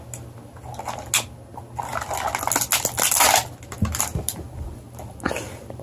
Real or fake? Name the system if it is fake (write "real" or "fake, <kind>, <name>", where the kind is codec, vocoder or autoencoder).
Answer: real